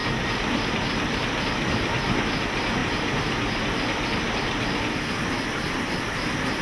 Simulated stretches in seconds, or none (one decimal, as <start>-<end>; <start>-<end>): none